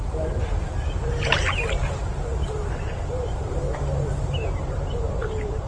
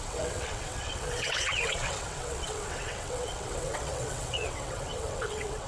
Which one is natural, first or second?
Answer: first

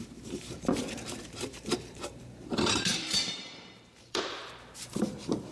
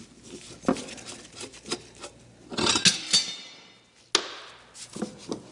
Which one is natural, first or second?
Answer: second